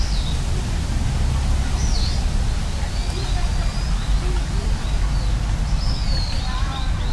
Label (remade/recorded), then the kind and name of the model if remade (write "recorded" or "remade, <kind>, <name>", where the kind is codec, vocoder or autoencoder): recorded